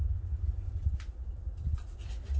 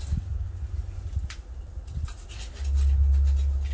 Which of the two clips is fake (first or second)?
first